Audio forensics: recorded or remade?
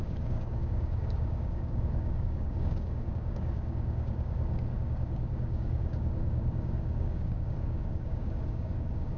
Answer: remade